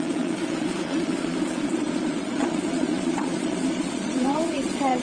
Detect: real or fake fake